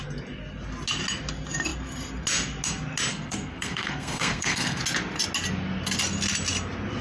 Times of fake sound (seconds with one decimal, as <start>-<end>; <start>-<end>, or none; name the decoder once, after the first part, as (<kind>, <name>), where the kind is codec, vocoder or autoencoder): 3.1-4.8 (codec, SNAC)